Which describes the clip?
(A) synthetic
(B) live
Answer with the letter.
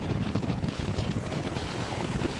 A